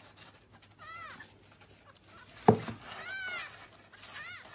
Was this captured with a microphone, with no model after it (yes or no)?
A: yes